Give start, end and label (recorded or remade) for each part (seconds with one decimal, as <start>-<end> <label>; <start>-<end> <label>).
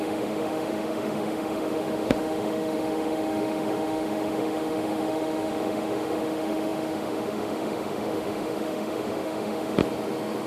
0.0-9.8 remade; 9.8-10.5 recorded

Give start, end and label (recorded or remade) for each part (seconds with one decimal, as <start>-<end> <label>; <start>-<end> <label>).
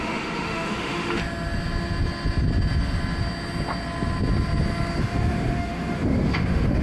0.0-1.2 remade; 1.2-5.0 recorded; 5.0-6.8 remade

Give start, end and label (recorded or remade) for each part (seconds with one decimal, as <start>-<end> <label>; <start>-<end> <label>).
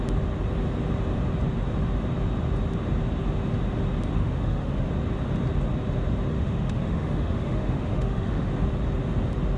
0.0-4.2 recorded; 4.2-4.9 remade; 4.9-6.3 recorded; 6.3-8.5 remade; 8.5-9.6 recorded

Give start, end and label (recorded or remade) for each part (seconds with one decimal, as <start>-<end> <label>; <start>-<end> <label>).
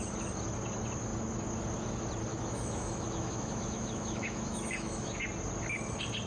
0.0-2.3 recorded; 2.3-5.2 remade; 5.2-6.3 recorded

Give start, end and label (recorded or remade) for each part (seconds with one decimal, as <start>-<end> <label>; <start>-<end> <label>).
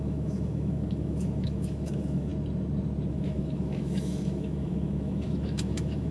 0.0-2.3 remade; 2.3-3.1 recorded; 3.1-6.1 remade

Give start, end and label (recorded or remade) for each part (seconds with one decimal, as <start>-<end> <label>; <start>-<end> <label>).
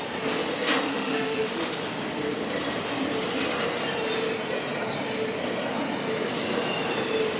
0.0-0.9 recorded; 0.9-1.7 remade; 1.7-7.4 recorded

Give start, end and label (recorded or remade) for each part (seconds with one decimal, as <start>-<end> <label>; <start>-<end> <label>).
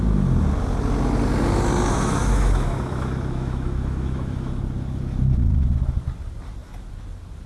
0.0-1.9 recorded; 1.9-4.6 remade; 4.6-7.5 recorded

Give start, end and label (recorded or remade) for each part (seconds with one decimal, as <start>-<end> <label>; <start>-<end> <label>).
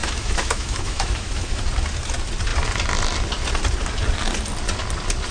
0.0-1.6 remade; 1.6-5.3 recorded